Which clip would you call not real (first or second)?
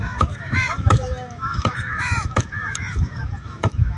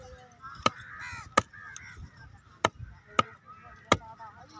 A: first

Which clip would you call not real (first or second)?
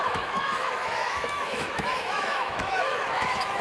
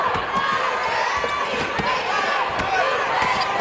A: first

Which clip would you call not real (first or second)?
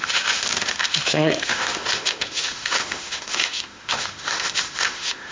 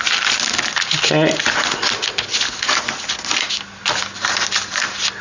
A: first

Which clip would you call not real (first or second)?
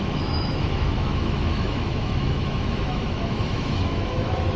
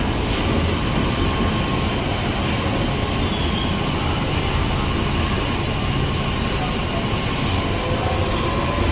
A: first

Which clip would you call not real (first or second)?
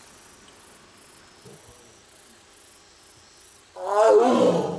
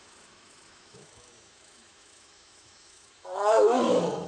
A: second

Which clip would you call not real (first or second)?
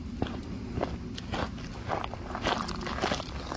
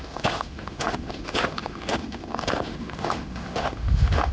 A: second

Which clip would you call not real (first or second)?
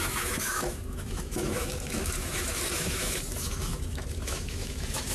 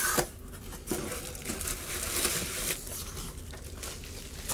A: first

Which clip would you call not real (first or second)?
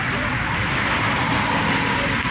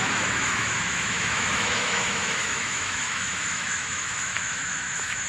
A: second